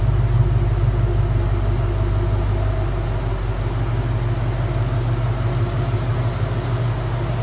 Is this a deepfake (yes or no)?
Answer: no